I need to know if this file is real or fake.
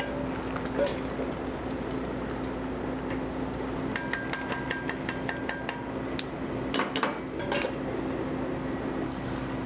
real